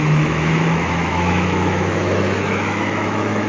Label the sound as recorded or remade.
remade